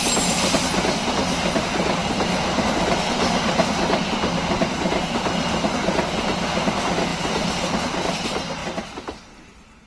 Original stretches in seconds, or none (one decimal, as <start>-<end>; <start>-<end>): 0.0-7.1; 8.1-9.9